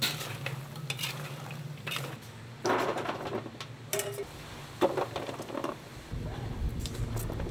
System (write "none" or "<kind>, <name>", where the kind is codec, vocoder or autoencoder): none